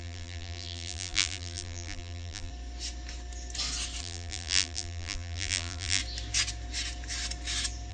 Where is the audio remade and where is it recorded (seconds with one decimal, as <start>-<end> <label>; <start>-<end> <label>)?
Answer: 0.0-2.5 remade; 2.5-4.0 recorded; 4.0-6.0 remade; 6.0-7.9 recorded